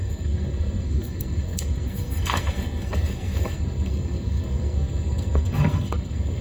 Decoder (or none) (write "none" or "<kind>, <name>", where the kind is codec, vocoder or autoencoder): codec, SNAC